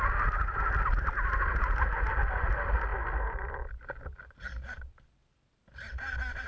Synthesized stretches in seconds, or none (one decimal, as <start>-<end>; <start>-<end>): none